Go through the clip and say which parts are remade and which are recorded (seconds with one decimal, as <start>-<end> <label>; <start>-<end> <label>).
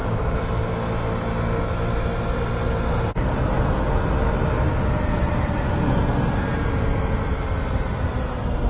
0.0-0.5 remade; 0.5-8.7 recorded